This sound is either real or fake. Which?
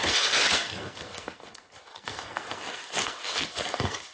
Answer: fake